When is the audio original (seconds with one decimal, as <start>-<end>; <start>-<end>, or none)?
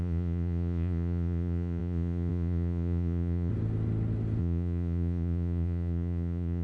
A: 3.5-4.4